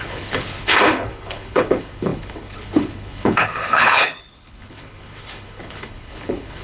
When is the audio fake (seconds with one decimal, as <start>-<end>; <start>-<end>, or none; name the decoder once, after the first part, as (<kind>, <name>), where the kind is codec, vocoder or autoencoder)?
0.0-6.6 (codec, HILCodec)